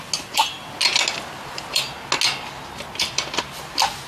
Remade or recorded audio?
recorded